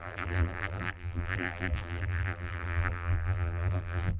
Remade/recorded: remade